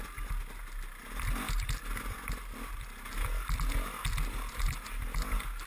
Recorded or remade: recorded